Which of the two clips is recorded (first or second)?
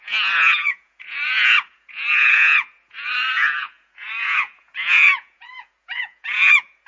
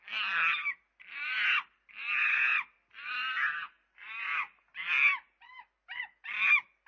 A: second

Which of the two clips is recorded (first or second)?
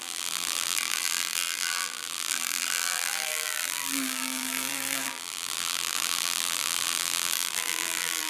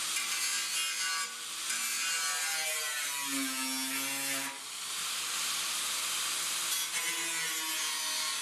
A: second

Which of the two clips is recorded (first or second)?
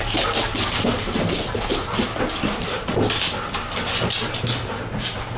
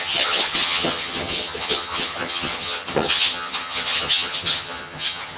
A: first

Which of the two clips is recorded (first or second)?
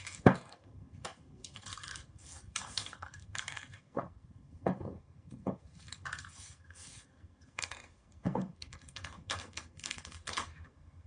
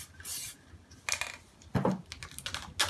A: second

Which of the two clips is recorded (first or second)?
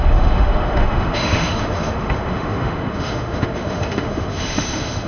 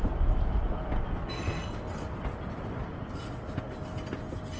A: second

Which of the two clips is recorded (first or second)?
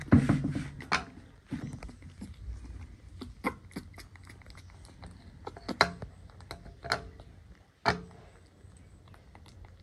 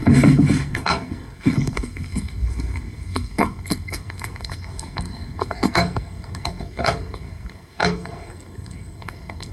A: first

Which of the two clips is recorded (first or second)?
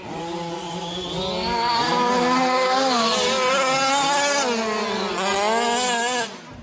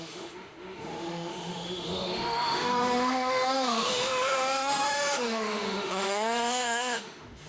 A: first